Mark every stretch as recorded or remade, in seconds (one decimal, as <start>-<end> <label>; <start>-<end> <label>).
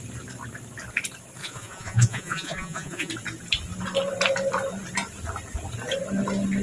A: 0.0-1.4 recorded; 1.4-3.1 remade; 3.1-6.6 recorded